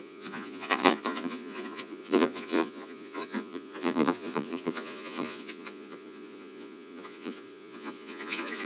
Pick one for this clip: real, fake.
fake